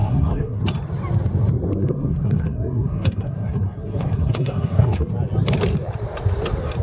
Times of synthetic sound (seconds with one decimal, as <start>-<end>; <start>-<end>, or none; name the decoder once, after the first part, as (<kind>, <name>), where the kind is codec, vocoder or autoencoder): 0.0-0.6 (codec, SNAC); 1.7-5.1